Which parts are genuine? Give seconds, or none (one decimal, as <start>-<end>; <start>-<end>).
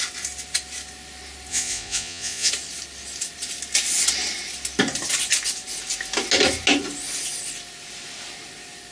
0.0-1.5; 2.5-8.9